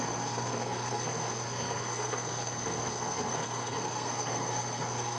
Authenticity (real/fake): fake